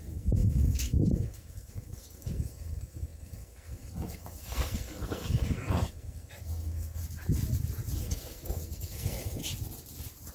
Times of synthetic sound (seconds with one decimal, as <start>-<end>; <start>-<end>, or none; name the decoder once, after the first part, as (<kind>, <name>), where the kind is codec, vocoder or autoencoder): 0.0-7.0 (codec, SNAC); 8.0-9.4